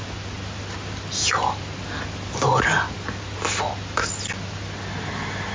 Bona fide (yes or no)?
yes